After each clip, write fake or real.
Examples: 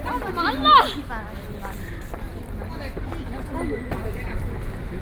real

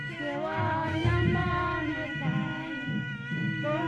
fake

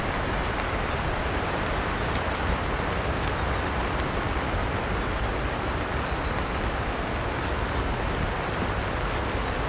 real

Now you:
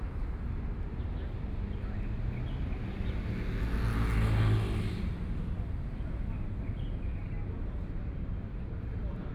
real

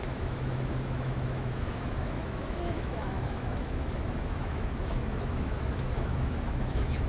fake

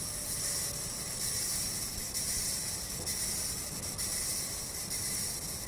real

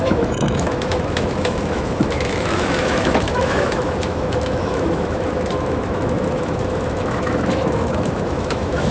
fake